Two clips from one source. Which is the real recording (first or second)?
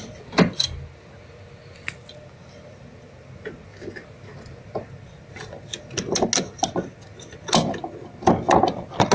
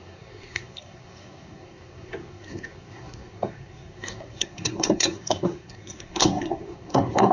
first